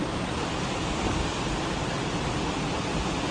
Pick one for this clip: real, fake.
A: real